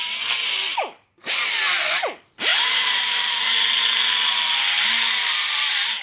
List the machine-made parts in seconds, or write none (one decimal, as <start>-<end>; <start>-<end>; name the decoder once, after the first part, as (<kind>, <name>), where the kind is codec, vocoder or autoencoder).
2.5-3.3 (vocoder, BigVGAN v2)